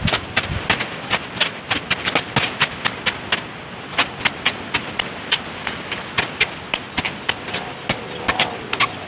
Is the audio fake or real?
real